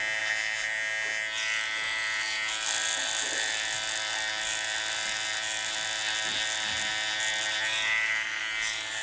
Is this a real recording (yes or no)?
yes